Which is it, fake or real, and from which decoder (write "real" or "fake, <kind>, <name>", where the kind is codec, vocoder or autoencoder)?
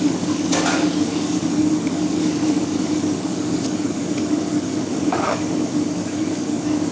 fake, codec, DAC